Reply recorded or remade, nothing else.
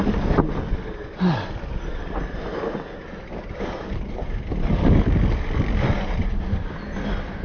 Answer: recorded